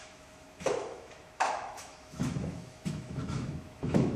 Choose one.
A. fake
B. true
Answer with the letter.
A